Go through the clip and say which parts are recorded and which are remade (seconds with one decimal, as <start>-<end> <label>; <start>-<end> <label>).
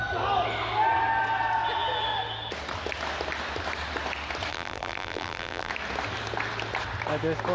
0.0-4.5 recorded; 4.5-5.7 remade; 5.7-7.5 recorded